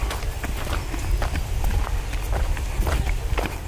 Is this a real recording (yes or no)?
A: yes